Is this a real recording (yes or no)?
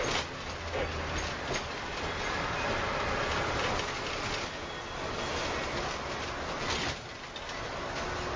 yes